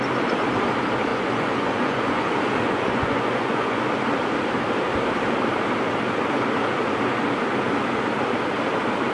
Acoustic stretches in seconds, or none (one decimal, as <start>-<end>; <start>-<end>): 0.0-1.1; 3.8-9.1